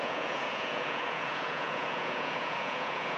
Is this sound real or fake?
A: fake